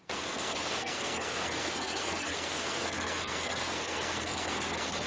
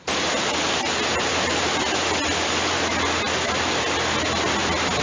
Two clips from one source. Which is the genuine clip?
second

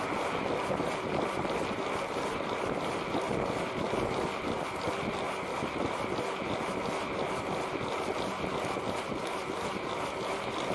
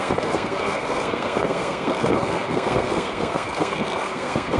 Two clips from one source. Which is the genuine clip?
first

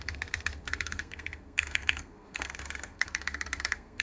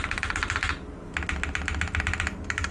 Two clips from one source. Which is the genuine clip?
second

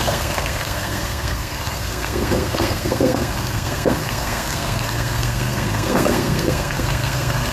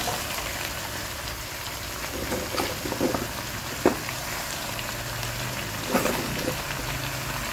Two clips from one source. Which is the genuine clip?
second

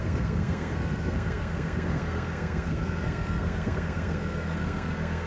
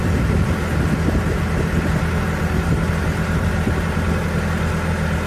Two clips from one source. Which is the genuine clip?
second